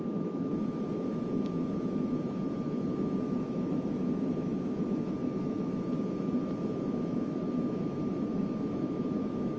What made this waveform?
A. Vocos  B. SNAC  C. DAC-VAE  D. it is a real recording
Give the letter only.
C